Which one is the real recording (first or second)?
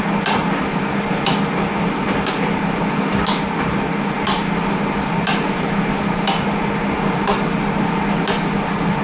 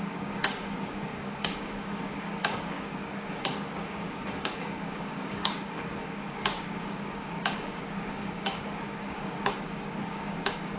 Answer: first